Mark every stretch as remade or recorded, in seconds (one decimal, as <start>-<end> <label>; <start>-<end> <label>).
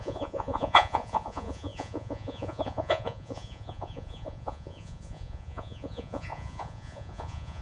0.0-7.6 remade